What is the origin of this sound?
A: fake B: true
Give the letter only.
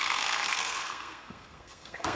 A